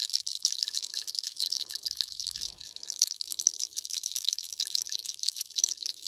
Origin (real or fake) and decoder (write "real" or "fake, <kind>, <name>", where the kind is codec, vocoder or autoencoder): fake, autoencoder, DAC-VAE